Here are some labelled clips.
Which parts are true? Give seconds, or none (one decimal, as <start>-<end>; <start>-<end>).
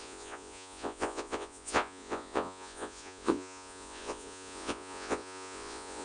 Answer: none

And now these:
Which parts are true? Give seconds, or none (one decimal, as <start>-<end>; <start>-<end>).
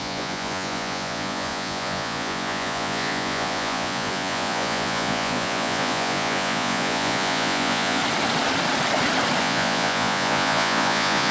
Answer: 8.0-9.4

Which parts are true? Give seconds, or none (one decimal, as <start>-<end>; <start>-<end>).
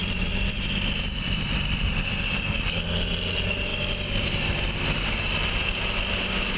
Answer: 2.4-3.7; 5.2-6.6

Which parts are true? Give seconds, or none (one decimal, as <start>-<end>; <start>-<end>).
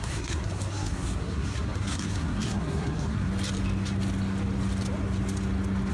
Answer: 3.3-5.9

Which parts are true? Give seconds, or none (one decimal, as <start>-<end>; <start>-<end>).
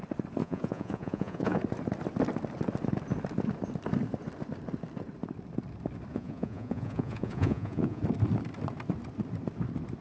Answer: 0.0-0.4; 1.6-6.1; 8.0-10.0